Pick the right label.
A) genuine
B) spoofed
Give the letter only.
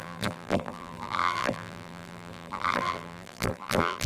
B